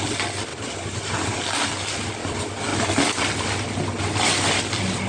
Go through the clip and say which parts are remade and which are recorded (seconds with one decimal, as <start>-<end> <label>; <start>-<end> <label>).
0.0-0.5 recorded; 0.5-1.4 remade; 1.4-5.1 recorded